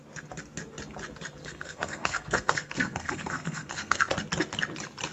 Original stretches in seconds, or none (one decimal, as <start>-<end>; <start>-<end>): 0.0-1.4; 4.1-5.1